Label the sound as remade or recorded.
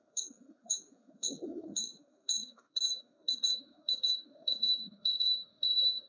remade